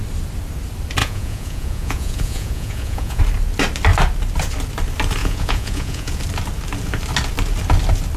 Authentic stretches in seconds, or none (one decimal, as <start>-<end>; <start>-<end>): 0.0-1.0; 3.2-5.2; 6.2-8.2